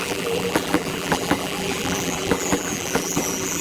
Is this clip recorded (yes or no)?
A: no